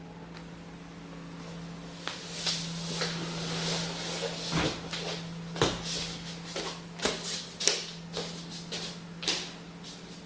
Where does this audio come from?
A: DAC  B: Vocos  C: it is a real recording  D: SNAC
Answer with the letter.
C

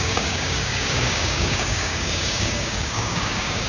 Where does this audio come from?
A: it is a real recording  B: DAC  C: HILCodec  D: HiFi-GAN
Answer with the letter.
B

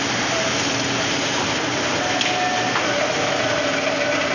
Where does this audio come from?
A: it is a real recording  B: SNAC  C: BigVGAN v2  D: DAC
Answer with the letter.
A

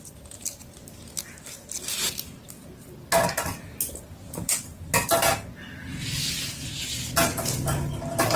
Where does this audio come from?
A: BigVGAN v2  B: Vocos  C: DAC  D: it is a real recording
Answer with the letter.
D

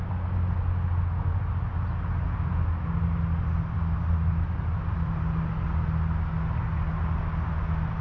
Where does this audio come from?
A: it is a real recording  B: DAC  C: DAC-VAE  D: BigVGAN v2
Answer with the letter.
A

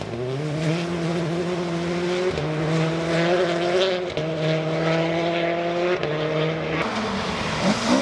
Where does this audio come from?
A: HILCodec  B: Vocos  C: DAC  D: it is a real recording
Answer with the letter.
D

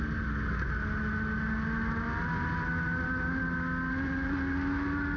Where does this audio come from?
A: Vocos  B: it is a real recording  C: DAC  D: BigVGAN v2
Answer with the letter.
B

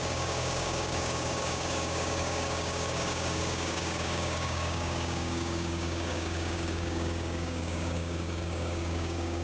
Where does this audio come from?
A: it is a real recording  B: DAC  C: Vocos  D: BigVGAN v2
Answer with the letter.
B